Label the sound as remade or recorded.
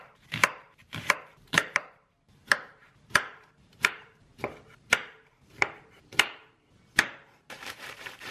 remade